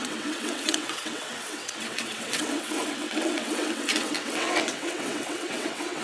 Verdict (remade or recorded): remade